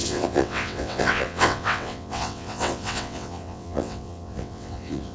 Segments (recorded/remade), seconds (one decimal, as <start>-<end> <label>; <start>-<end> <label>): 0.0-5.1 remade

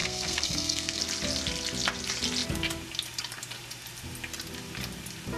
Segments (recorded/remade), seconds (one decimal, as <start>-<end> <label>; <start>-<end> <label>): 0.0-1.0 remade; 1.0-5.4 recorded

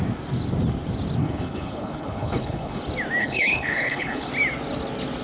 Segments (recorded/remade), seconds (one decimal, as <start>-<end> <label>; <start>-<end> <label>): 0.0-1.2 recorded; 1.2-2.8 remade; 2.8-3.2 recorded; 3.2-4.3 remade; 4.3-5.2 recorded